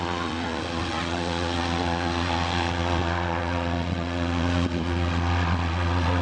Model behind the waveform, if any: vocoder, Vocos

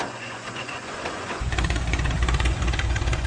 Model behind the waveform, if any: vocoder, Vocos